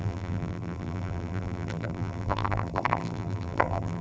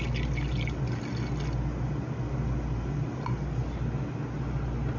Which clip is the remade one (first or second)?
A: first